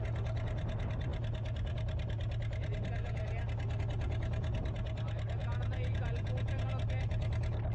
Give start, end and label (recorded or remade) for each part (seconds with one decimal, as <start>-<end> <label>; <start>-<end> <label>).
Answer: 0.0-5.4 recorded; 5.4-6.7 remade; 6.7-7.7 recorded